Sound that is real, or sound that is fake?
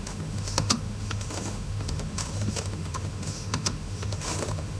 fake